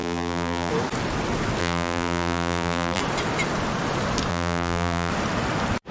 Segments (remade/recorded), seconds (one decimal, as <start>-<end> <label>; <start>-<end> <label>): 0.0-0.7 remade; 0.7-1.6 recorded; 1.6-3.0 remade; 3.0-4.3 recorded; 4.3-5.1 remade; 5.1-5.9 recorded